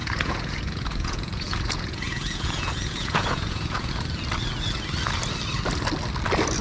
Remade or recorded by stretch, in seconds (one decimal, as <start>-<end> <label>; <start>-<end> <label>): 0.0-3.9 remade; 3.9-6.6 recorded

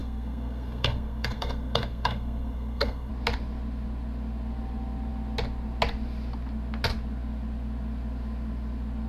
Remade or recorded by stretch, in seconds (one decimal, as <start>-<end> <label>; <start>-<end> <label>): 0.0-3.1 remade; 3.1-9.1 recorded

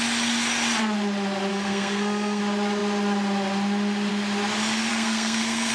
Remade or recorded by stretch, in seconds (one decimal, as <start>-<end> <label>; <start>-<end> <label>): 0.0-1.5 recorded; 1.5-2.4 remade; 2.4-4.9 recorded; 4.9-5.7 remade

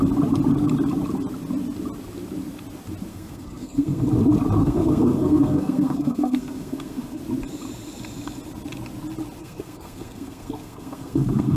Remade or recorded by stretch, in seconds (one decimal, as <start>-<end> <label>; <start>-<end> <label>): 0.0-3.1 recorded; 3.1-4.0 remade; 4.0-4.6 recorded; 4.6-7.2 remade; 7.2-9.4 recorded; 9.4-11.6 remade

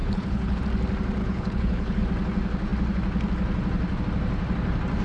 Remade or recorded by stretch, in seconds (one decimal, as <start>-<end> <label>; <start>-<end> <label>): 0.0-0.6 remade; 0.6-1.2 recorded; 1.2-2.0 remade; 2.0-5.0 recorded

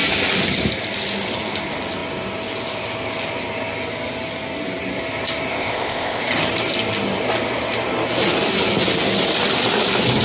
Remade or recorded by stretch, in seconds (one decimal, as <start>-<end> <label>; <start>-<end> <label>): 0.0-5.5 recorded; 5.5-6.2 remade; 6.2-10.2 recorded